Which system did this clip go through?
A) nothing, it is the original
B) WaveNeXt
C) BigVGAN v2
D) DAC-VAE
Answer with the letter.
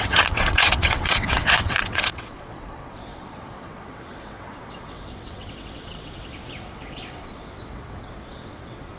B